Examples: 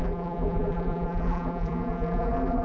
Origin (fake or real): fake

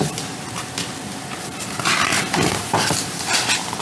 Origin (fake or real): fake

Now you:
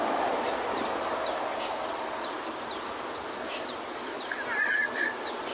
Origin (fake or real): real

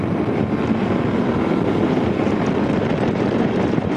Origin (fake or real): real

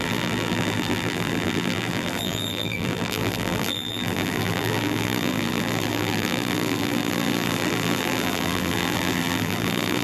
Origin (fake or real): fake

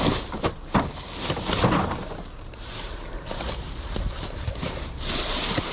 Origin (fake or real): fake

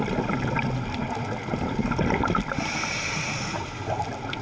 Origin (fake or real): real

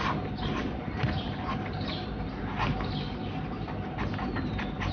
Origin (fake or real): fake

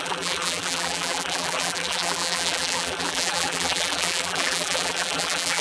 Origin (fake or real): fake